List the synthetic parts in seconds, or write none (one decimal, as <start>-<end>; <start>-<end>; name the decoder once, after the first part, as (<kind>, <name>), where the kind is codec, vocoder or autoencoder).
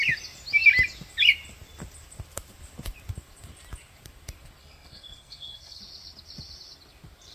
4.6-5.8 (codec, SNAC)